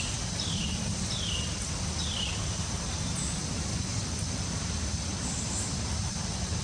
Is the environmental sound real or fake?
real